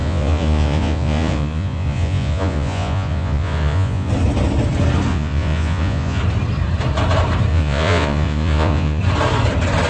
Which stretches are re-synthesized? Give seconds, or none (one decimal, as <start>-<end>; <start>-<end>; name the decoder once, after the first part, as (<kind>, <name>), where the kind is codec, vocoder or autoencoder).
0.0-4.1 (vocoder, Vocos); 5.1-6.2; 7.5-9.0